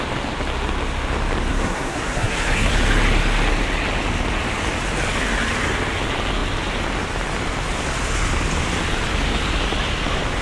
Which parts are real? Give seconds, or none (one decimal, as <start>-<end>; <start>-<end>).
0.0-1.5; 2.7-10.4